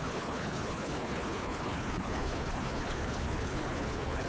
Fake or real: fake